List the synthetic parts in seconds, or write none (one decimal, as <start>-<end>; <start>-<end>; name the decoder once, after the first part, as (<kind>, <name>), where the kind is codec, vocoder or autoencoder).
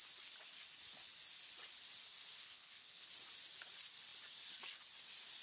2.4-3.1 (codec, HILCodec)